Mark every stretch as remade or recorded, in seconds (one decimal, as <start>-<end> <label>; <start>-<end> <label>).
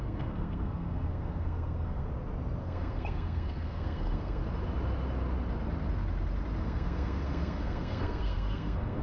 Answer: 0.0-2.1 remade; 2.1-2.6 recorded; 2.6-4.4 remade; 4.4-6.6 recorded; 6.6-9.0 remade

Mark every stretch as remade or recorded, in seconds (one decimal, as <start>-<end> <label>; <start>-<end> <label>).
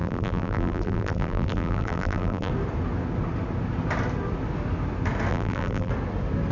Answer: 0.0-2.5 remade; 2.5-5.3 recorded; 5.3-5.9 remade; 5.9-6.5 recorded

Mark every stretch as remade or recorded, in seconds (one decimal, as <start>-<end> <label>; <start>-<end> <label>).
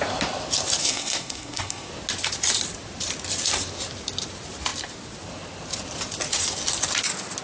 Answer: 0.0-0.8 recorded; 0.8-1.9 remade; 1.9-7.4 recorded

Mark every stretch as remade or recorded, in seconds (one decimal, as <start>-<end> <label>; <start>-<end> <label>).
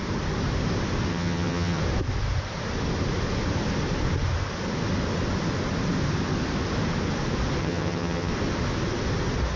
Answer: 0.0-1.1 recorded; 1.1-1.8 remade; 1.8-7.6 recorded; 7.6-8.3 remade; 8.3-9.6 recorded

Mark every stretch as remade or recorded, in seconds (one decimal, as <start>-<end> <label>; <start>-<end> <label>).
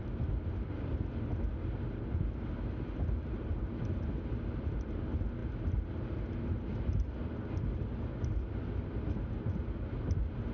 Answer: 0.0-10.5 recorded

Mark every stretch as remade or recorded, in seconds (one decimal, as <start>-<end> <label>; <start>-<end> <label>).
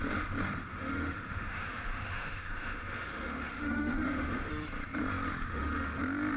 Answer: 0.0-0.7 recorded; 0.7-4.5 remade; 4.5-5.5 recorded; 5.5-6.0 remade; 6.0-6.4 recorded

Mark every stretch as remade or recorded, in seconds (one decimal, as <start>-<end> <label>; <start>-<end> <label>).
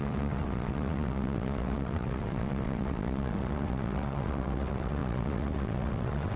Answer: 0.0-6.4 remade